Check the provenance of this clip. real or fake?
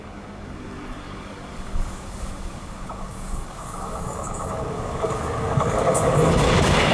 fake